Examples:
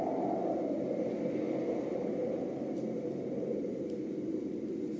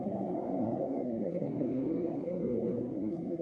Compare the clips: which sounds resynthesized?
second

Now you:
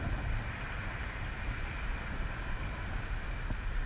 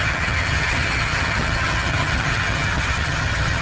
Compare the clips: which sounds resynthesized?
second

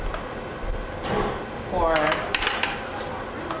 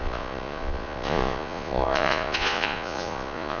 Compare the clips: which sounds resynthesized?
second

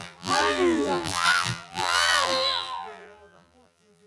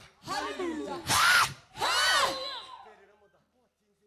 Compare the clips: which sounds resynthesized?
first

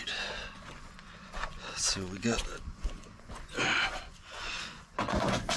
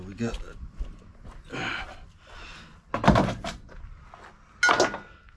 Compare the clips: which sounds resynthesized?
first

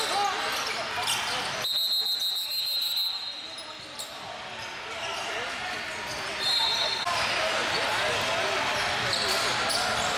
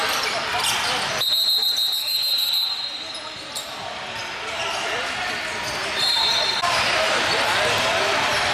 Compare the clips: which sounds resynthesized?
second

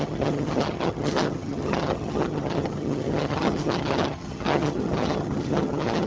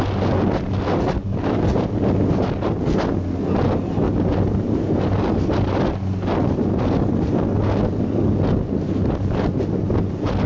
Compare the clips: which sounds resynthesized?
first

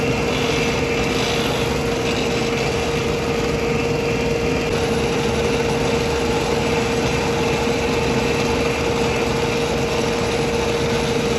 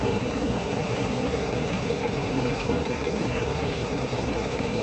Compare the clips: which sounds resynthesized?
second